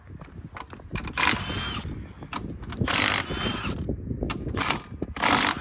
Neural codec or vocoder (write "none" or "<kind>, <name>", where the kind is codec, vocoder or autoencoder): none